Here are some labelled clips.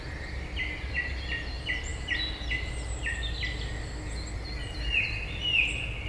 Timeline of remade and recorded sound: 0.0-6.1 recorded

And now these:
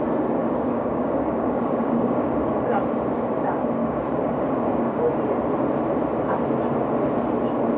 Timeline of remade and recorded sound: 0.0-0.4 recorded; 0.4-2.5 remade; 2.5-3.8 recorded; 3.8-5.0 remade; 5.0-7.8 recorded